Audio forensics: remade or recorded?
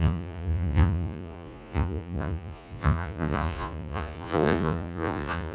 remade